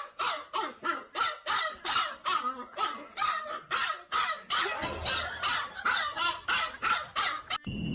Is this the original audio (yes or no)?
yes